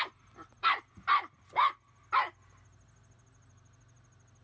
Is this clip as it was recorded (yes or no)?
yes